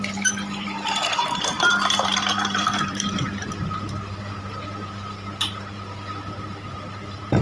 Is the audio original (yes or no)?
no